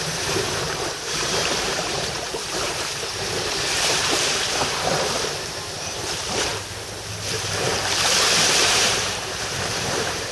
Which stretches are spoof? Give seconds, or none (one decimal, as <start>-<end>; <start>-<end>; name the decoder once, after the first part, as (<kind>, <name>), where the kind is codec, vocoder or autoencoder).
0.0-6.5 (vocoder, BigVGAN v2); 8.6-10.3